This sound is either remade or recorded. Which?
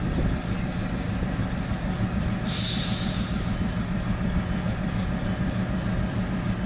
recorded